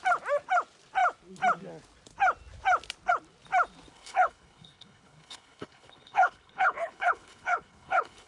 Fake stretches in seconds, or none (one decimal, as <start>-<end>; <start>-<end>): 3.9-8.3